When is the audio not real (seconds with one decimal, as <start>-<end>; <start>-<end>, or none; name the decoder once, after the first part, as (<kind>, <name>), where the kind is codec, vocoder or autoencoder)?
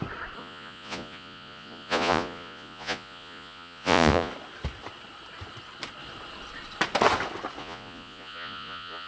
0.4-4.3 (vocoder, Vocos); 7.6-9.1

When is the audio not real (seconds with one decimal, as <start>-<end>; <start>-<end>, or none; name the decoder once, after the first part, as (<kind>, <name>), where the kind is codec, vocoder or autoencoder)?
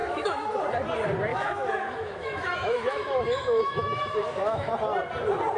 0.0-0.6 (autoencoder, DAC-VAE); 1.3-4.7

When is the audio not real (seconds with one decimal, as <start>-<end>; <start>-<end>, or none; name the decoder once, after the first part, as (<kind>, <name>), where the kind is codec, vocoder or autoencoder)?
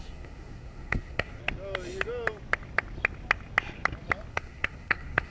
0.0-1.4 (codec, SNAC); 4.3-5.3